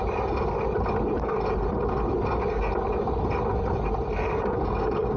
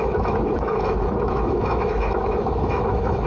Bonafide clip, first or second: first